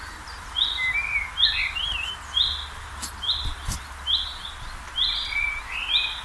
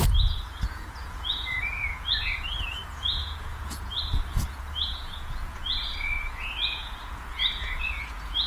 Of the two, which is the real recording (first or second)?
first